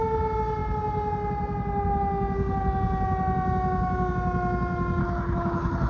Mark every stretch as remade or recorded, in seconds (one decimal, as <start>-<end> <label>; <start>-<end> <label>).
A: 0.0-5.0 recorded; 5.0-5.9 remade